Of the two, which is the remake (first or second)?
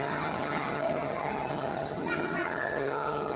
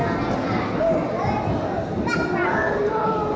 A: first